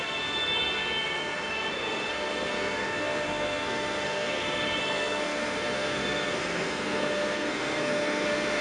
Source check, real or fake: fake